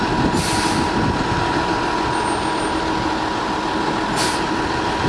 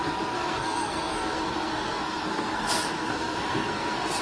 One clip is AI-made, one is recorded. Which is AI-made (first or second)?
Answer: second